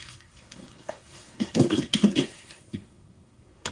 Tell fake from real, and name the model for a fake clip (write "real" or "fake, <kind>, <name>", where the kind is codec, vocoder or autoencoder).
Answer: fake, codec, SNAC